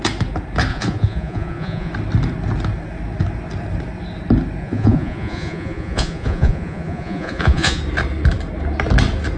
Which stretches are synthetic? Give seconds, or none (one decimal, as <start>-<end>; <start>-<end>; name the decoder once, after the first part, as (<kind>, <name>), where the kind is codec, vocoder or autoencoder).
0.7-1.9 (vocoder, Vocos); 4.6-7.8